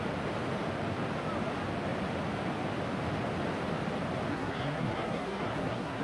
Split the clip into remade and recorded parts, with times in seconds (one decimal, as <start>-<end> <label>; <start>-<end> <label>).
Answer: 0.0-4.3 recorded; 4.3-6.0 remade